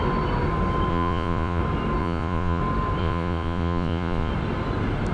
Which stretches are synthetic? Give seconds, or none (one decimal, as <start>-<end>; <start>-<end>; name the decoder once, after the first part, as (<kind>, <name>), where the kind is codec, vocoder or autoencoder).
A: 0.9-1.6 (vocoder, Vocos); 2.0-2.6; 3.0-4.3